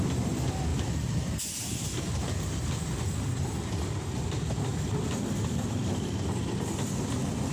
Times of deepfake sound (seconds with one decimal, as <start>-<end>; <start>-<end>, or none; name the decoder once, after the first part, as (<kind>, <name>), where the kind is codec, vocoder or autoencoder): none